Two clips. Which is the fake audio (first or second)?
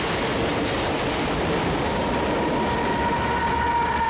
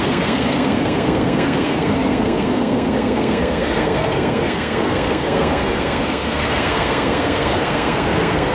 second